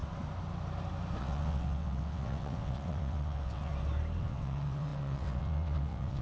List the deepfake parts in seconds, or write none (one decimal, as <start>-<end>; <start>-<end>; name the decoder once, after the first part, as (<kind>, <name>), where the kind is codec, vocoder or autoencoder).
1.2-3.7 (vocoder, WaveNeXt); 4.2-6.2